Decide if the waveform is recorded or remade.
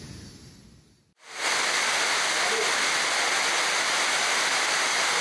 recorded